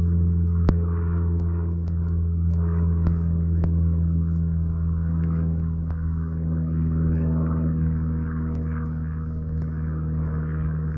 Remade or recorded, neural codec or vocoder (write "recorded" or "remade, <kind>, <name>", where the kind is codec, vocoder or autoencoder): remade, codec, DAC